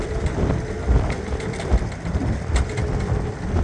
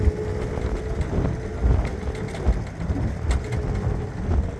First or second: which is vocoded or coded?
first